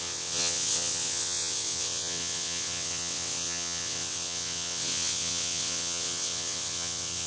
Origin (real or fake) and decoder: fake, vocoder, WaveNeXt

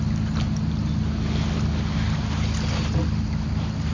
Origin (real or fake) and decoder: real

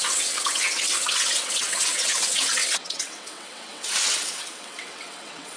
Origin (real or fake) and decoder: fake, vocoder, WaveNeXt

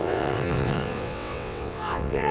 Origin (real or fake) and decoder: fake, vocoder, WaveNeXt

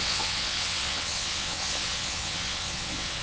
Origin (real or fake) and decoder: fake, vocoder, WaveNeXt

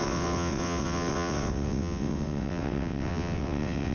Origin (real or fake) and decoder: fake, vocoder, WaveNeXt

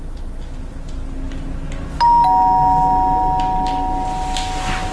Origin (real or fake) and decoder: real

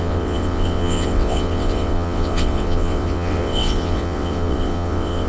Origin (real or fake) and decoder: fake, vocoder, WaveNeXt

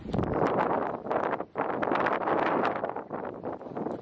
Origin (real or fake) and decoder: real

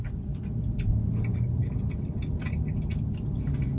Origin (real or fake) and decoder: real